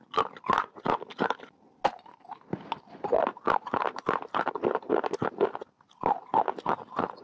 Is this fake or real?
real